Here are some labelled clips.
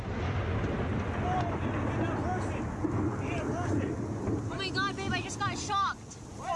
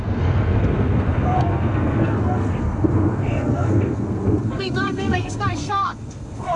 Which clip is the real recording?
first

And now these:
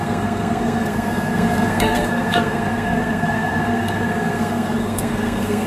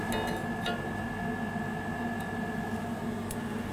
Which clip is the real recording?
second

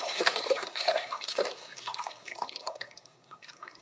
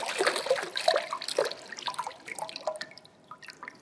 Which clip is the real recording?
second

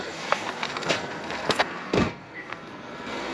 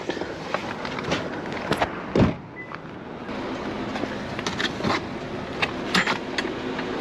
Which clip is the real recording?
second